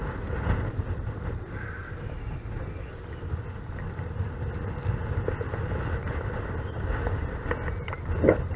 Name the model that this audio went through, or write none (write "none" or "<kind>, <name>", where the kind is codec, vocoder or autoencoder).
none